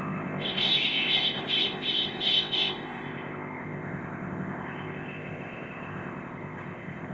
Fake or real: fake